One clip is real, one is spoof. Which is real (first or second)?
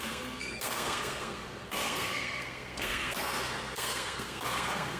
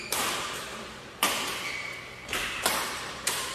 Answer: second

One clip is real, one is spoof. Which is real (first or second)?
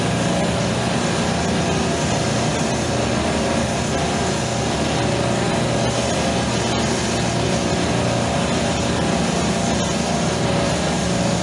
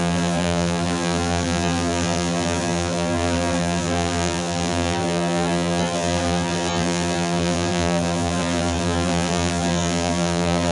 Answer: first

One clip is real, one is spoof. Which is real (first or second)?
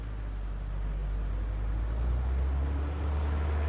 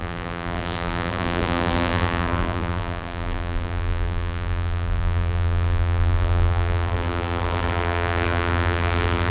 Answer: first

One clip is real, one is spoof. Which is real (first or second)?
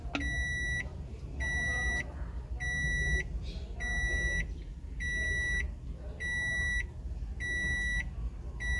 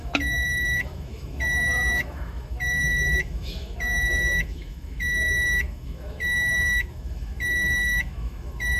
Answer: first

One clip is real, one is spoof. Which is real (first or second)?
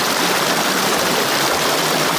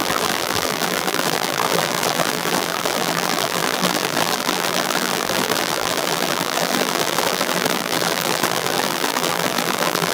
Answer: first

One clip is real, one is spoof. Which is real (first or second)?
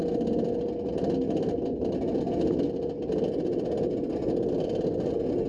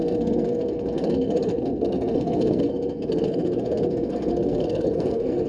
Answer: first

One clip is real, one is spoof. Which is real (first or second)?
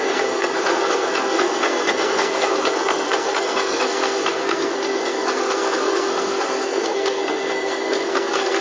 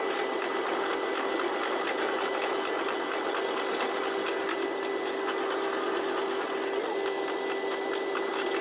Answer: second